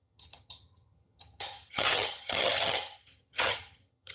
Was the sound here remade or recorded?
remade